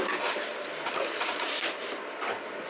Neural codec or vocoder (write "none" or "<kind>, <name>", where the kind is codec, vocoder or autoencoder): none